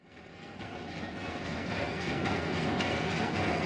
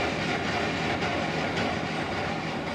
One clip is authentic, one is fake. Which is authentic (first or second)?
second